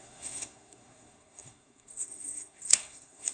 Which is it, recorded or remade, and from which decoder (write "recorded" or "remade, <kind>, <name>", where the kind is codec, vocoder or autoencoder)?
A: remade, codec, SNAC